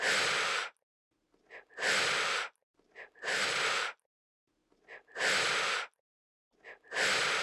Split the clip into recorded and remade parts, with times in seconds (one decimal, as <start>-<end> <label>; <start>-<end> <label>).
0.0-2.6 recorded; 2.6-3.8 remade; 3.8-7.4 recorded